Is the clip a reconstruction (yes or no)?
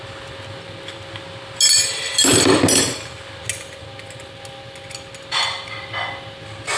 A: no